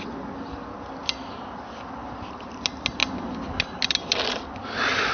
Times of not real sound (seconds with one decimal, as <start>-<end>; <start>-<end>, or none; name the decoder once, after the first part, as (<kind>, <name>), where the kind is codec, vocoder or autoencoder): none